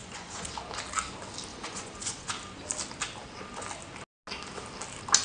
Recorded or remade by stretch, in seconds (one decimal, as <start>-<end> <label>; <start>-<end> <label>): 0.0-0.5 remade; 0.5-1.5 recorded; 1.5-2.3 remade; 2.3-5.2 recorded